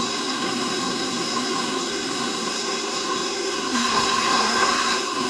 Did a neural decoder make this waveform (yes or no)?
yes